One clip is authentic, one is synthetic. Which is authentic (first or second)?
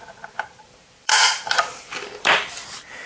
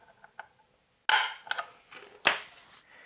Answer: second